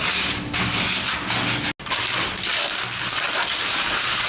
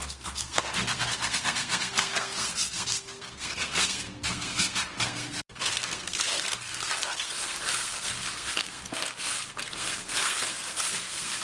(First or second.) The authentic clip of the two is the first